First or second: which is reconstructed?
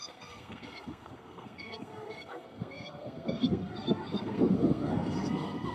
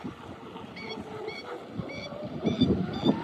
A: first